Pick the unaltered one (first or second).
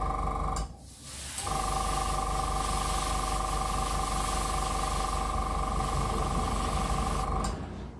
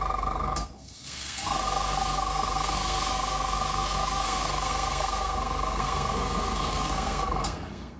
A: first